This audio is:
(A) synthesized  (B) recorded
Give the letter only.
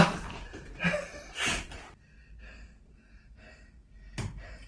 B